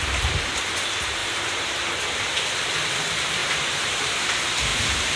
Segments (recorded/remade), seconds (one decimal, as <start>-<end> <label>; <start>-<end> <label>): 0.0-1.2 recorded; 1.2-2.2 remade; 2.2-3.4 recorded; 3.4-4.2 remade; 4.2-5.2 recorded